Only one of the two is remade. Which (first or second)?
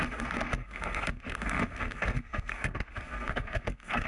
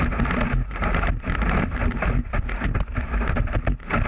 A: first